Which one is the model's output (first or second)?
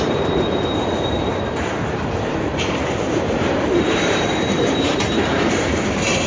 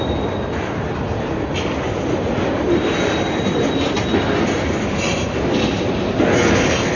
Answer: first